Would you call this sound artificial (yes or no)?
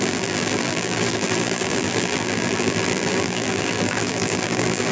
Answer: yes